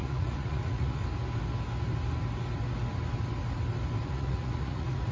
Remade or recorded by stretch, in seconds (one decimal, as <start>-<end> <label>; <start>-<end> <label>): 0.0-1.0 remade; 1.0-4.1 recorded; 4.1-5.1 remade